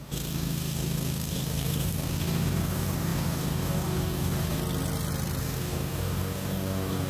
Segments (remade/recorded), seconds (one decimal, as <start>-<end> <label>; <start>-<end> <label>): 0.0-4.6 remade; 4.6-5.4 recorded; 5.4-7.1 remade

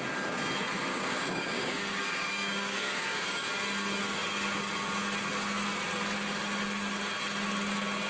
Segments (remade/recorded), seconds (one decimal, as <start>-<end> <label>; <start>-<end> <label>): 0.0-0.9 recorded; 0.9-3.5 remade; 3.5-8.1 recorded

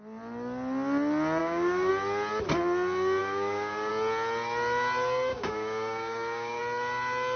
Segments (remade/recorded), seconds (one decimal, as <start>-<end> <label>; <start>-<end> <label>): 0.0-1.4 recorded; 1.4-1.9 remade; 1.9-3.2 recorded; 3.2-3.9 remade; 3.9-5.3 recorded; 5.3-6.6 remade; 6.6-7.4 recorded